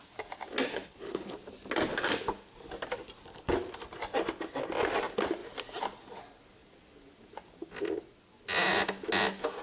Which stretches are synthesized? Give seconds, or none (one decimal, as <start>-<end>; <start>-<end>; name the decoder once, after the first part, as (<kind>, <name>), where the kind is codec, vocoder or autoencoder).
0.7-1.3 (codec, HILCodec)